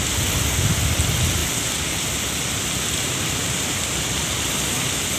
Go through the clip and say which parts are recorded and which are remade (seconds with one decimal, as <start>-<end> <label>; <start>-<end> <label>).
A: 0.0-1.4 recorded; 1.4-4.5 remade; 4.5-5.2 recorded